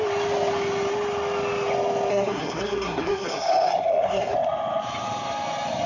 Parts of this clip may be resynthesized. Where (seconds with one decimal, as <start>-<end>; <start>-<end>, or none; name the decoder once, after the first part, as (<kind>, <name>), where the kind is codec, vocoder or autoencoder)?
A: 2.1-4.3 (codec, SNAC)